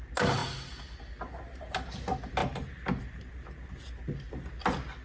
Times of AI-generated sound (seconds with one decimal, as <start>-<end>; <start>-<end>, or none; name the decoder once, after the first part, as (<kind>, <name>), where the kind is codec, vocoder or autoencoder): none